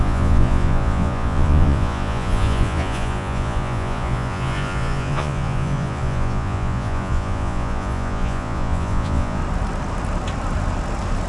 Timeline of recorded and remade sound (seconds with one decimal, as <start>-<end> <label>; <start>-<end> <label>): 0.0-9.4 remade; 9.4-11.3 recorded